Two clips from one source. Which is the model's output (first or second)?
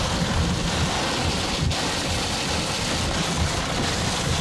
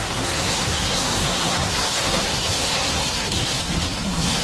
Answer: second